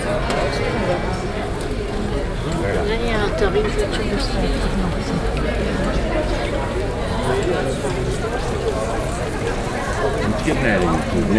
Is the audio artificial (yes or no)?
no